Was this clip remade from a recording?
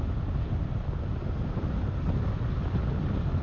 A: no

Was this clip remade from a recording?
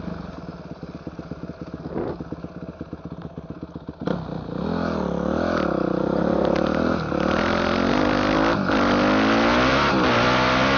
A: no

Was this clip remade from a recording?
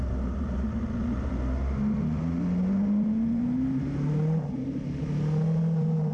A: no